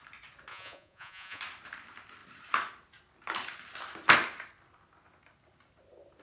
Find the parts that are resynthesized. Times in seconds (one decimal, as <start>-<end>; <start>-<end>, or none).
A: 0.5-1.4